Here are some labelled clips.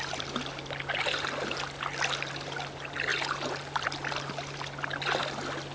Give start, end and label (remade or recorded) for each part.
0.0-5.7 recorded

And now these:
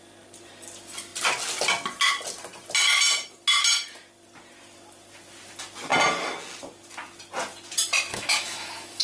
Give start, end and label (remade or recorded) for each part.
0.0-8.1 recorded; 8.1-9.0 remade

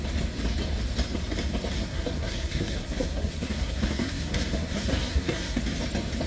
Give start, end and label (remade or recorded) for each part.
0.0-1.8 recorded; 1.8-5.6 remade; 5.6-6.3 recorded

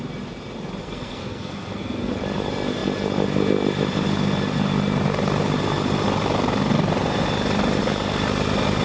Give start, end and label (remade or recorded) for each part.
0.0-0.8 recorded; 0.8-2.1 remade; 2.1-8.8 recorded